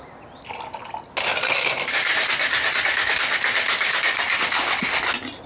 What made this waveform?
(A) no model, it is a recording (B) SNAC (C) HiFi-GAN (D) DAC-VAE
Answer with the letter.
A